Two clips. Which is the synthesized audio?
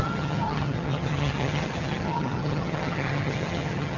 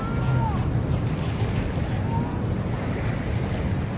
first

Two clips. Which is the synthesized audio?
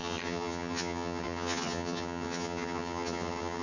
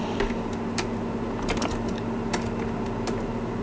first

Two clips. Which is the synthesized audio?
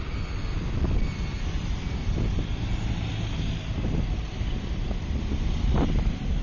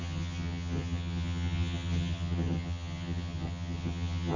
second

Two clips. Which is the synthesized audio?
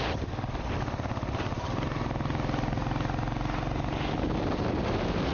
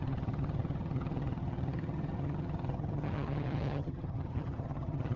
second